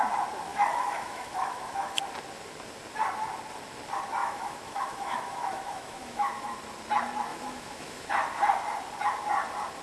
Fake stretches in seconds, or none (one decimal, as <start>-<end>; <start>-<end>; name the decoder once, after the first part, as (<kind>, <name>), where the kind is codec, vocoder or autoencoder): 0.5-2.0 (autoencoder, DAC-VAE); 4.2-6.6; 7.3-8.1